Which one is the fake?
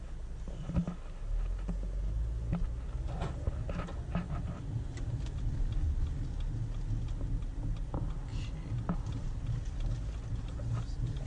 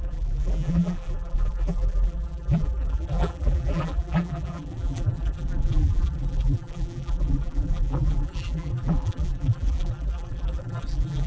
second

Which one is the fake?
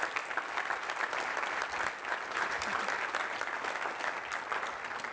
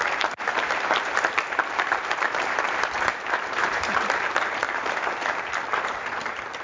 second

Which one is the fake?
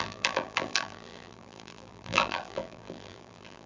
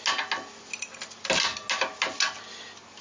first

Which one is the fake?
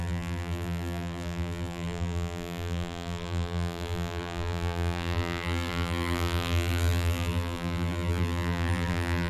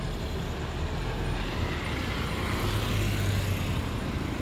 first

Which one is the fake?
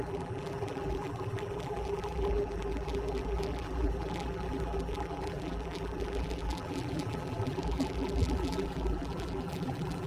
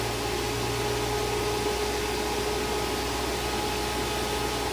first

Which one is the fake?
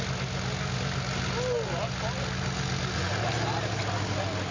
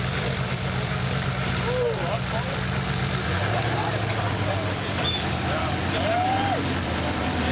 second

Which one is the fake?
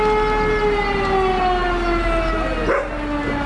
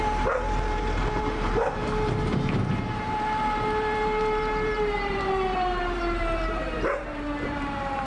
second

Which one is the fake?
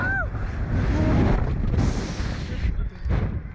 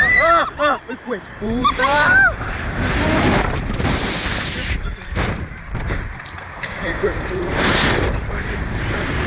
second